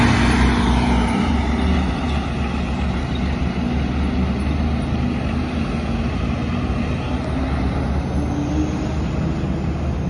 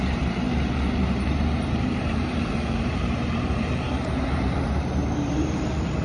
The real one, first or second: first